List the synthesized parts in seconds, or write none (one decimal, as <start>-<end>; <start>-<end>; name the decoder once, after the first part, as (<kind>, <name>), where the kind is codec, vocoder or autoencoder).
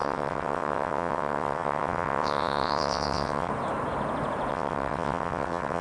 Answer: 0.0-3.5 (vocoder, WaveNeXt); 4.5-5.8